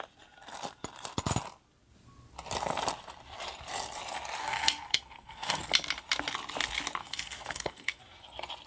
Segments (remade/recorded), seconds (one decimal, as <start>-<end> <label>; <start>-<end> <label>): 0.0-4.4 recorded; 4.4-5.6 remade; 5.6-7.0 recorded; 7.0-8.0 remade; 8.0-8.7 recorded